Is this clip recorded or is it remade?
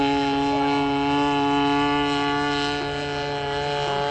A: recorded